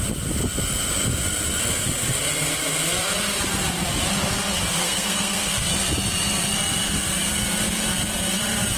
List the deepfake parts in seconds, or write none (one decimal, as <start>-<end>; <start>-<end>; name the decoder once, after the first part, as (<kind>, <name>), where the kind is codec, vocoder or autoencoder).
4.8-5.7 (codec, SNAC)